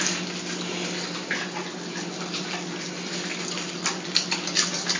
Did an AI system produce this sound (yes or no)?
no